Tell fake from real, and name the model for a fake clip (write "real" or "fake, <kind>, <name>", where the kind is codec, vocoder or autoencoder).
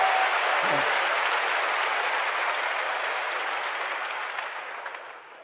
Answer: real